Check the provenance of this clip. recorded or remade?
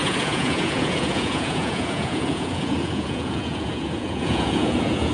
remade